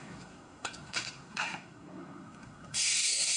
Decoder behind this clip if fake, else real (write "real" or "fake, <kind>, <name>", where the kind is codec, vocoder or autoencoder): fake, codec, SNAC